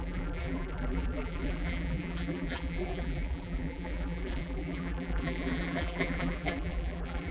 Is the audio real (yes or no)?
no